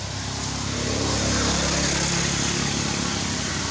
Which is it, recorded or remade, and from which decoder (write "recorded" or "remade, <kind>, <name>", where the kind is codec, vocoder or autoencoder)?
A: recorded